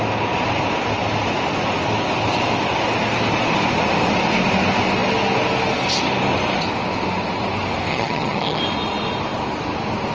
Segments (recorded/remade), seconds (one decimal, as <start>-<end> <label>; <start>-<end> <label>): 0.0-7.9 recorded; 7.9-8.6 remade; 8.6-10.1 recorded